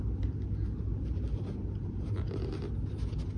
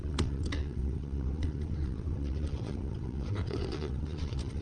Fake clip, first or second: second